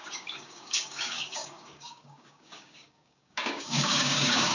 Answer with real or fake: fake